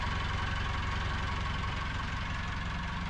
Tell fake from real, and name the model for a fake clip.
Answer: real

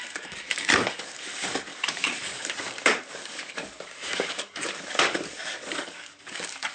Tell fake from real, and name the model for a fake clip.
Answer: fake, codec, DAC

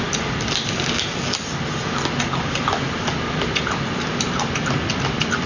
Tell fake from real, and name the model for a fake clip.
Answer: real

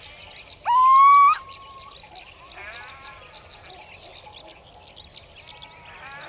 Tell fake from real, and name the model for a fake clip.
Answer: real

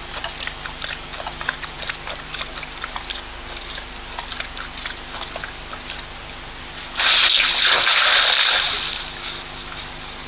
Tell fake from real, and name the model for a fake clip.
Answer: real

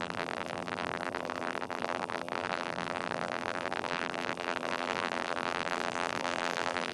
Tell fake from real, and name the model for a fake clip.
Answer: fake, vocoder, BigVGAN v2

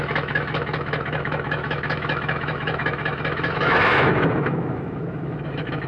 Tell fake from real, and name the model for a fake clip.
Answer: fake, autoencoder, DAC-VAE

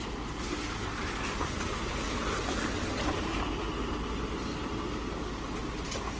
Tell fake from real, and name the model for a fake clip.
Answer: real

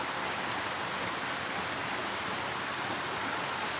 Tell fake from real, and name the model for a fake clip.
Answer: real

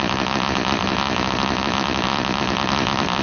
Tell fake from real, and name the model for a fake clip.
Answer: fake, vocoder, BigVGAN v2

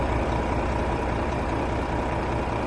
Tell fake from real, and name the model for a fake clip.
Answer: fake, vocoder, BigVGAN v2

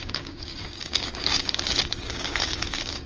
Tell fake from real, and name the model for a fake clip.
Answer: fake, codec, DAC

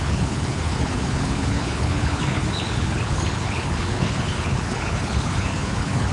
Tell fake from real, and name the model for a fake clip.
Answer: fake, codec, HILCodec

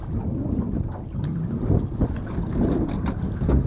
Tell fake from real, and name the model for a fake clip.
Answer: real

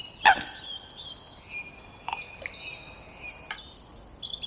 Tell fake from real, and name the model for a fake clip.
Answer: real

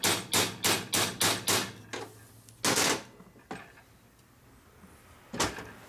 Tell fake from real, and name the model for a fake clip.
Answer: real